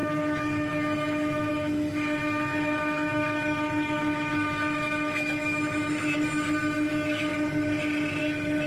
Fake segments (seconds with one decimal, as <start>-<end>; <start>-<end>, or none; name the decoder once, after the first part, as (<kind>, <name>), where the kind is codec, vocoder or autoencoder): 0.0-7.3 (autoencoder, DAC-VAE); 8.2-8.7